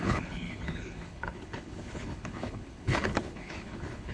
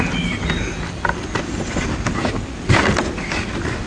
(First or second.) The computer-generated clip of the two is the first